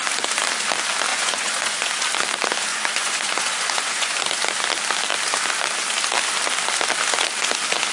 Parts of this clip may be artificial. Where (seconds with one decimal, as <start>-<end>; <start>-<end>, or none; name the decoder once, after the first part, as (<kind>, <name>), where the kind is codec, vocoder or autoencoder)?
1.1-1.9 (vocoder, Vocos); 2.7-4.2